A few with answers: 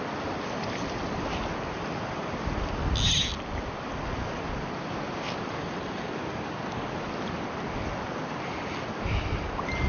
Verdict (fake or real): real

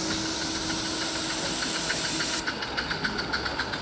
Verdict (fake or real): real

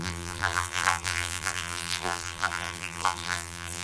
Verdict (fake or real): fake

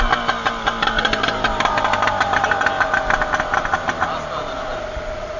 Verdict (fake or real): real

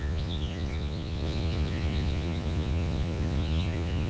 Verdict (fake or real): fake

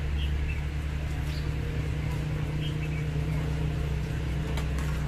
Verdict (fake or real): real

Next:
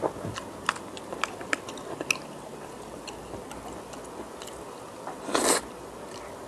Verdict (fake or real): real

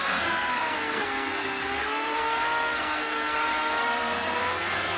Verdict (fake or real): fake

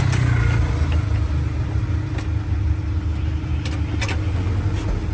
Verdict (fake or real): real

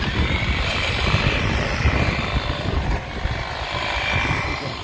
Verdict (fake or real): fake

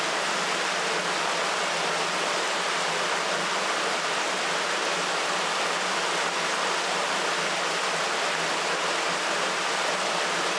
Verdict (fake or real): real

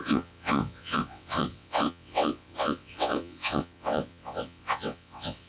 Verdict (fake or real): fake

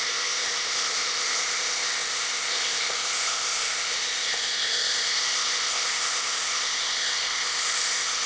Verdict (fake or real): fake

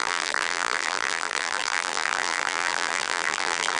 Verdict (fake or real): fake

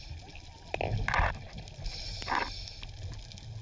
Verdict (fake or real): real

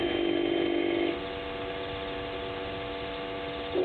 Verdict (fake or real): real